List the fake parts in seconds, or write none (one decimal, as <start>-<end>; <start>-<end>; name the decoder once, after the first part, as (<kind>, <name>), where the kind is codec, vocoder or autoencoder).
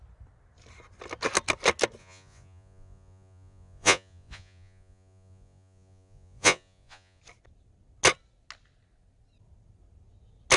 2.0-7.2 (vocoder, Vocos)